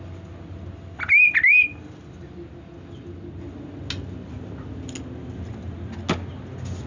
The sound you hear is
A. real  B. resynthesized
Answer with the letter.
A